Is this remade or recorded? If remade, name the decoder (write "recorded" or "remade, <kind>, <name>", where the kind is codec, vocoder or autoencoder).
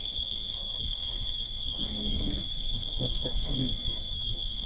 remade, codec, SNAC